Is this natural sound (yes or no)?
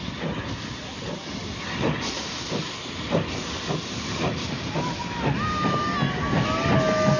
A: yes